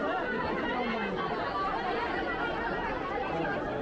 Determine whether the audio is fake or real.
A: real